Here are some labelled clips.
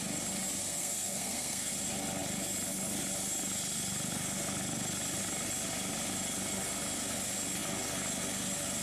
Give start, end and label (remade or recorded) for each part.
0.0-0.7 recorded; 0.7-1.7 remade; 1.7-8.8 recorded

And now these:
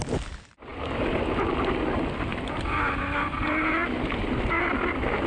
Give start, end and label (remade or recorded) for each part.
0.0-5.3 recorded

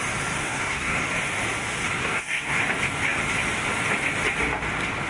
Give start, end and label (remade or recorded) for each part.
0.0-0.4 recorded; 0.4-1.0 remade; 1.0-2.0 recorded; 2.0-2.6 remade; 2.6-5.1 recorded

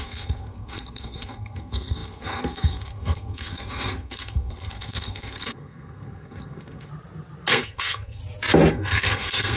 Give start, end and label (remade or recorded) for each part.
0.0-6.9 remade; 6.9-7.5 recorded; 7.5-8.2 remade; 8.2-8.7 recorded; 8.7-9.6 remade